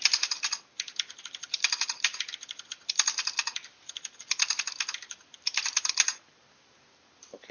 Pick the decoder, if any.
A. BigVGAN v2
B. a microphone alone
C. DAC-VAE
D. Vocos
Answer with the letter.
B